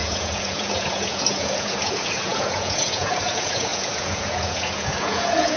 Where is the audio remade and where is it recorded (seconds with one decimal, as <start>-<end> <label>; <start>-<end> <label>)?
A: 0.0-5.6 remade